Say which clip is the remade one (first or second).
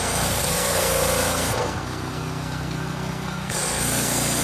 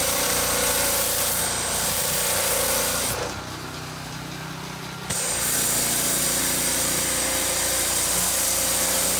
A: first